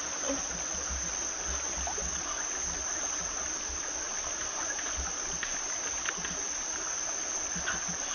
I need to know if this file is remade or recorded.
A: recorded